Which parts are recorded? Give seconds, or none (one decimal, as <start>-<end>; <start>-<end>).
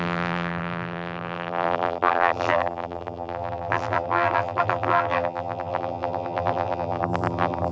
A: none